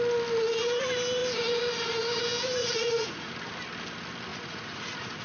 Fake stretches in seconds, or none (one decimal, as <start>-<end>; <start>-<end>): 2.6-3.3; 4.3-5.2